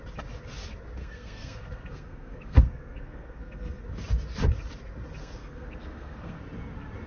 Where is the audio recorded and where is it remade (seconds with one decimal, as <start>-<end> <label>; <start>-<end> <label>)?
0.0-1.0 recorded; 1.0-3.8 remade; 3.8-5.2 recorded; 5.2-6.4 remade; 6.4-7.1 recorded